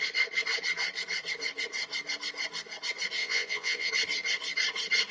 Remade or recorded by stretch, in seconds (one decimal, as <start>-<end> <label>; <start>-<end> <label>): 0.0-3.2 recorded; 3.2-3.9 remade; 3.9-5.1 recorded